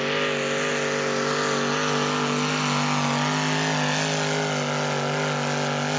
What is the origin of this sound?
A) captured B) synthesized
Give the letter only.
A